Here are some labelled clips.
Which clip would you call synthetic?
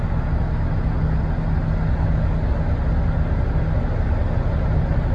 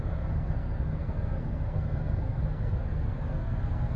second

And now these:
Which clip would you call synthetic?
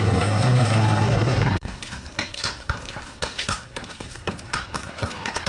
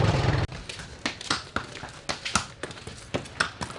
first